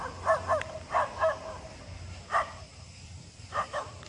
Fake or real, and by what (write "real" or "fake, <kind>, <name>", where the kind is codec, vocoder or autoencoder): real